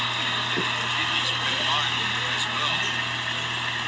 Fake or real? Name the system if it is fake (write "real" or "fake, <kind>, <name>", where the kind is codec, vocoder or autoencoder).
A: real